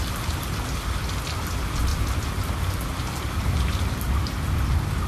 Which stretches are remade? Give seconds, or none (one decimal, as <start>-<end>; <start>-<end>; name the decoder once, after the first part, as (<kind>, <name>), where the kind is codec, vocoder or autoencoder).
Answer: none